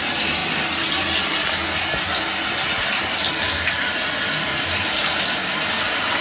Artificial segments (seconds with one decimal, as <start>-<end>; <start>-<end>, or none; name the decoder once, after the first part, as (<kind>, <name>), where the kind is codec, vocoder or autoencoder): none